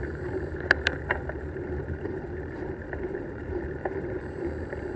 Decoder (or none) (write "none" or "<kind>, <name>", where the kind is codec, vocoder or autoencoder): vocoder, BigVGAN v2